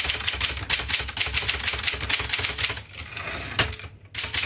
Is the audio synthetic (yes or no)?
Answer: no